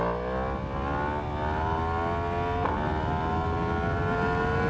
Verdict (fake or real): real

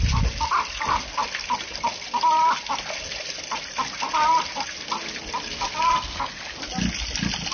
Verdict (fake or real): real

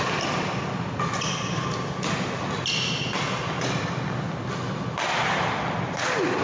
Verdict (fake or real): real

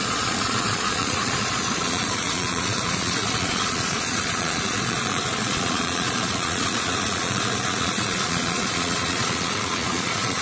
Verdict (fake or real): fake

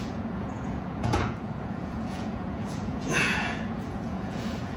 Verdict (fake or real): fake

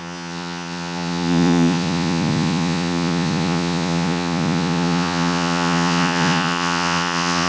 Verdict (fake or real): fake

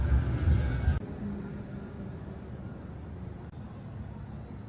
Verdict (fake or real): real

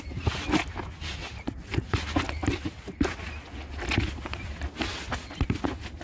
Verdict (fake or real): real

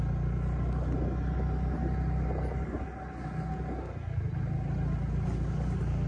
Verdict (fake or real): real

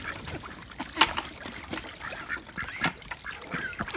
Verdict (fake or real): real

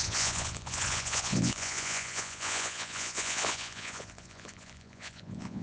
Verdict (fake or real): fake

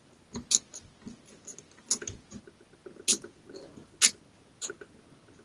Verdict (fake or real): real